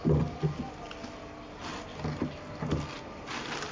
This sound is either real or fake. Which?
real